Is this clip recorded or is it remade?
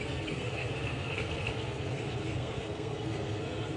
remade